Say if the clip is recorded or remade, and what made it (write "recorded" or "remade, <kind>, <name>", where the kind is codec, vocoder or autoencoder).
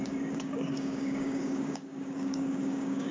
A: remade, codec, DAC